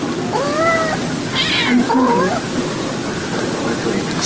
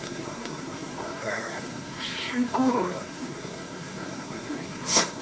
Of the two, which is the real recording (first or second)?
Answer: first